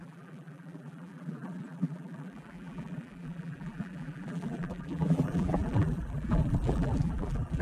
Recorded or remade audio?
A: remade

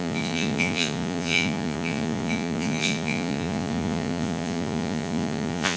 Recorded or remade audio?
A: remade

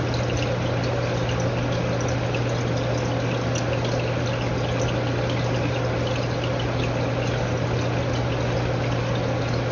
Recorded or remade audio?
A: recorded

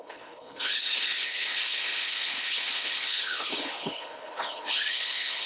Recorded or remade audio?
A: remade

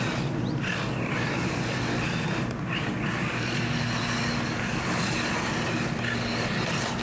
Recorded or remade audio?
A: recorded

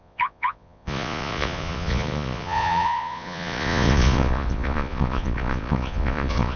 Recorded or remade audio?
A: remade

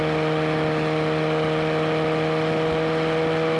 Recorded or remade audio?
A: recorded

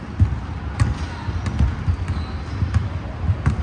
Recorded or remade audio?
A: recorded